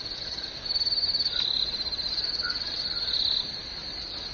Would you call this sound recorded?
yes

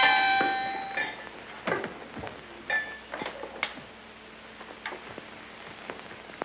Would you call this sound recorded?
yes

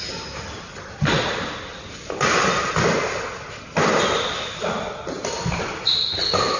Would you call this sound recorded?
yes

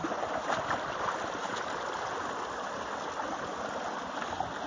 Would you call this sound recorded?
yes